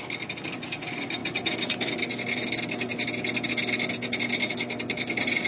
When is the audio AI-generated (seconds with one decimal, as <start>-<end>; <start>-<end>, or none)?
none